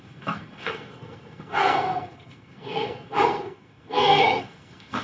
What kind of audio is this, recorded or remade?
remade